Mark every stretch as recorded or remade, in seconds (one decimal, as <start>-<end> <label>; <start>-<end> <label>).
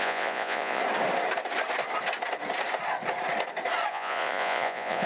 0.0-0.8 remade; 0.8-3.9 recorded; 3.9-5.1 remade